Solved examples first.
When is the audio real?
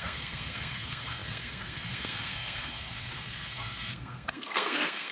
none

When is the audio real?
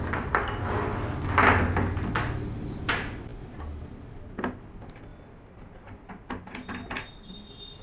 0.0-7.8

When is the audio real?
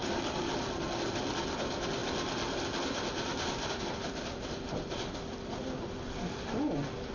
0.0-7.1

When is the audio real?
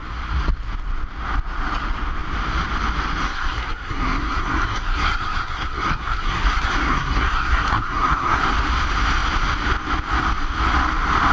0.0-3.2; 8.4-11.3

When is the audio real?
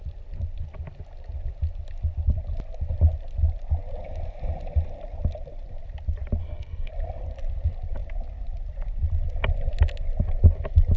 0.0-6.4; 6.9-11.0